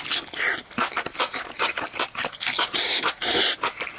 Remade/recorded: recorded